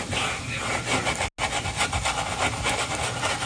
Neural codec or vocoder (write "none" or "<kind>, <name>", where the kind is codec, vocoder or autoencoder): none